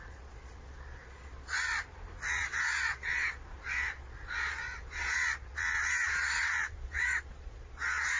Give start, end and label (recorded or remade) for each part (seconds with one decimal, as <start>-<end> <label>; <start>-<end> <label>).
0.0-1.7 remade; 1.7-2.3 recorded; 2.3-8.2 remade